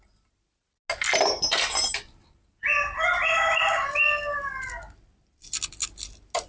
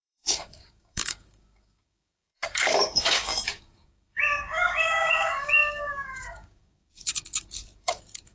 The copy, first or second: second